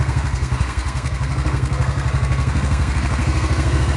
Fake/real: fake